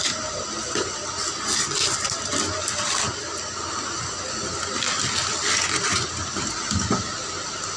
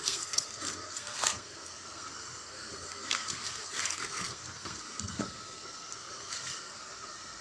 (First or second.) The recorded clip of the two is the first